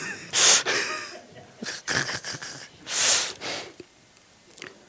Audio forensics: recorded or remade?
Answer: recorded